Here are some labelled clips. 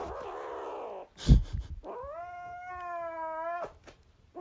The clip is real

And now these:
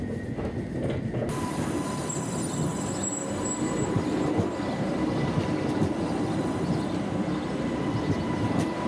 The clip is real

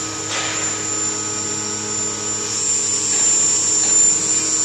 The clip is real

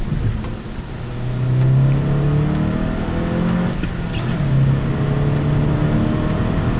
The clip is real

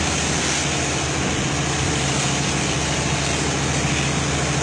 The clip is real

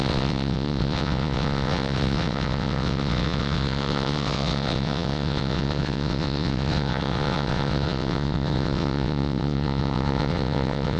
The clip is fake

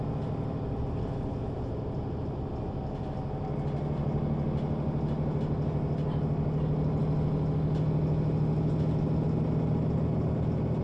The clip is real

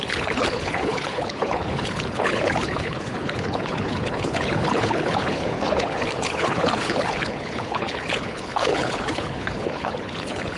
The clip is fake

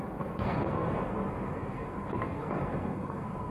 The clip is fake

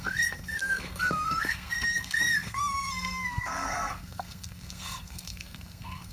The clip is fake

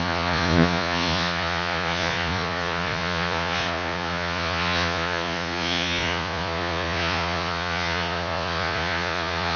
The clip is fake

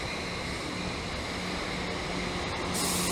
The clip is real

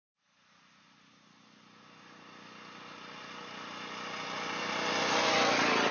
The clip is real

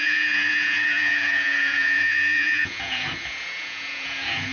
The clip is fake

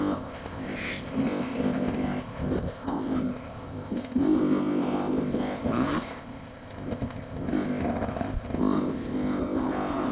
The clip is fake